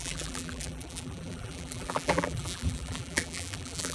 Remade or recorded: remade